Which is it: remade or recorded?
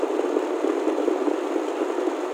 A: recorded